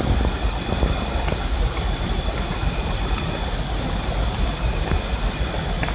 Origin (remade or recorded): recorded